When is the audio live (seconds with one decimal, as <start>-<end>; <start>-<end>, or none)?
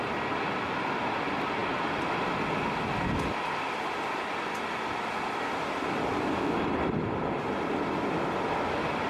0.0-1.6; 2.4-9.1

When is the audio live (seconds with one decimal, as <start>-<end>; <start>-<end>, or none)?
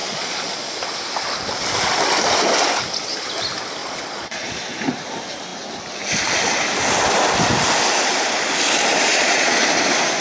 0.7-3.8; 4.5-9.1; 9.6-10.2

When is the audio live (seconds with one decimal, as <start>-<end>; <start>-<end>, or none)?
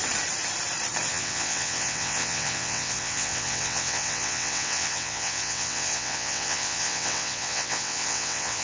0.0-1.1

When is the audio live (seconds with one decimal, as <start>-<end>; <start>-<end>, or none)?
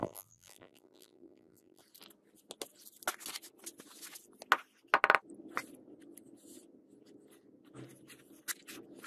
1.8-9.1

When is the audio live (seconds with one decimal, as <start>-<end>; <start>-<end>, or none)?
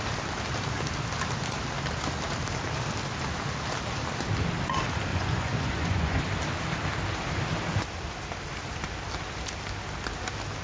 0.0-5.1; 6.2-10.6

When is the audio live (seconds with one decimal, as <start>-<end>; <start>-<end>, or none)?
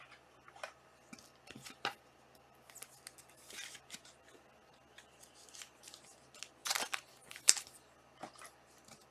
0.0-6.6; 7.1-9.1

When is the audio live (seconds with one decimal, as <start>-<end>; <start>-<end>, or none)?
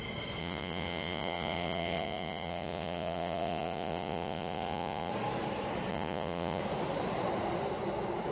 0.0-0.4; 5.1-5.9; 6.6-8.3